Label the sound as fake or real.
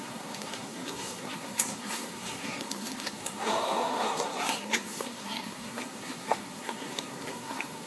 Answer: fake